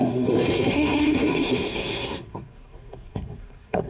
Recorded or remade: remade